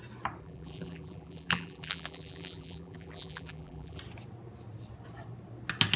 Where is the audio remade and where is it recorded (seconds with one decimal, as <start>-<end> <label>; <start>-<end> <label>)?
0.0-0.4 recorded; 0.4-4.0 remade; 4.0-6.0 recorded